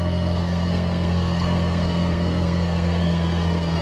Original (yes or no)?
no